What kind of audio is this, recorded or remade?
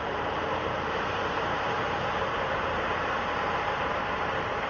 remade